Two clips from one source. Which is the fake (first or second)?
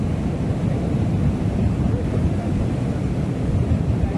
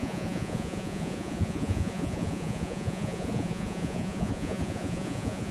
second